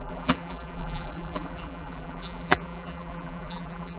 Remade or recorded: remade